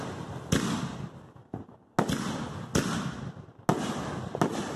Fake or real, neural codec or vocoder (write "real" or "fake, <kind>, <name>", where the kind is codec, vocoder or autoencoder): real